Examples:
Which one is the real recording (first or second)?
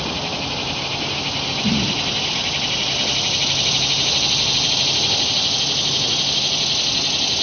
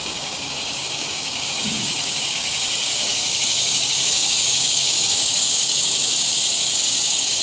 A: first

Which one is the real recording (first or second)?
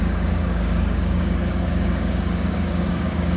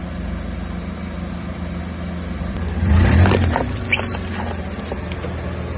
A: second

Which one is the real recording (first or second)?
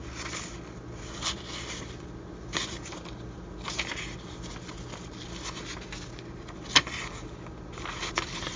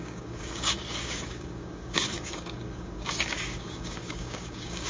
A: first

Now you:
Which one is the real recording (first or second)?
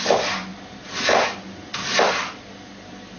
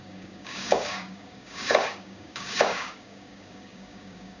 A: first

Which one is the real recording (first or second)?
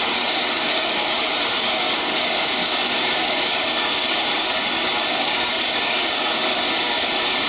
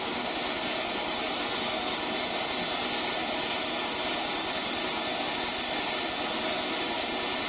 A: second